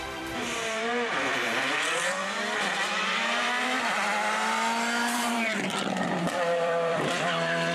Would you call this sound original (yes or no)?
no